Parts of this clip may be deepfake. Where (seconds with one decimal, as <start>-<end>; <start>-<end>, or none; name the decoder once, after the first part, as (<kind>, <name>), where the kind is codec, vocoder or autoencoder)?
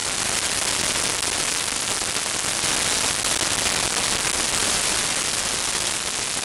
none